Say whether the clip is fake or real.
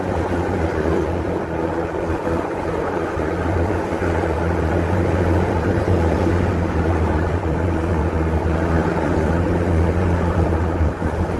fake